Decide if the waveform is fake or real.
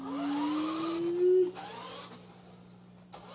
real